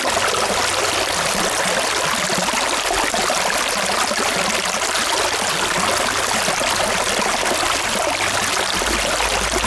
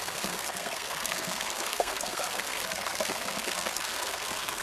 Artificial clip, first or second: second